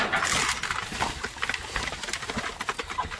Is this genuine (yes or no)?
yes